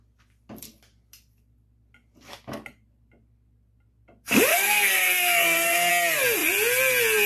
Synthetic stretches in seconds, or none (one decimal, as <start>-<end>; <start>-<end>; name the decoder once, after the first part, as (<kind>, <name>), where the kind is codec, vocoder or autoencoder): 4.5-5.9 (codec, SNAC)